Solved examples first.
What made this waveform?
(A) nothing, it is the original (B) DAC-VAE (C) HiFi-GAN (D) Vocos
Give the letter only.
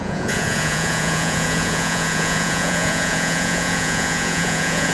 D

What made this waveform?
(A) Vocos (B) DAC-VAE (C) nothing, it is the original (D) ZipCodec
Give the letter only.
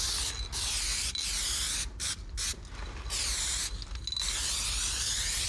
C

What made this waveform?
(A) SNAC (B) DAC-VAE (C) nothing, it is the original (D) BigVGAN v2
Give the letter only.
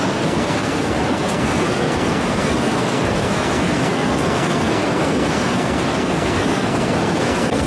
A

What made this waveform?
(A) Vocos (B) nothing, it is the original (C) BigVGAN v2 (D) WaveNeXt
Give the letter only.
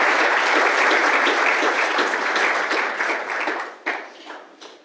C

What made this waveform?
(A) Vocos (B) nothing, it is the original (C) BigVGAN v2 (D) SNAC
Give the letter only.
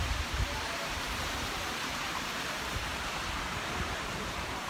C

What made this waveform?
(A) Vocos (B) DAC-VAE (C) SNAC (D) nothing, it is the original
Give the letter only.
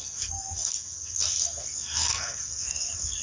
C